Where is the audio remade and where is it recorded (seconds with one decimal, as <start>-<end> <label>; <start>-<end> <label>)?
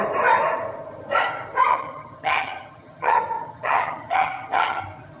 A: 0.0-1.7 recorded; 1.7-4.8 remade; 4.8-5.2 recorded